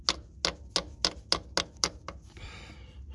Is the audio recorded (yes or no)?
yes